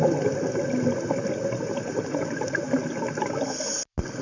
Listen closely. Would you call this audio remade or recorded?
recorded